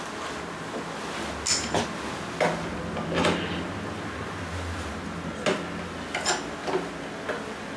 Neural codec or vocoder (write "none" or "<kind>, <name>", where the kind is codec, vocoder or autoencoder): none